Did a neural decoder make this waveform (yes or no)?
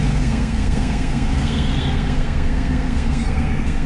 yes